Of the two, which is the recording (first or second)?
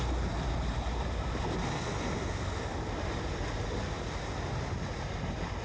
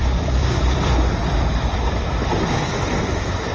first